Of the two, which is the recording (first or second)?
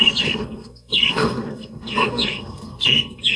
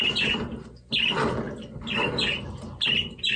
second